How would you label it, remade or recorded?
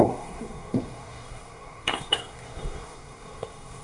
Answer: remade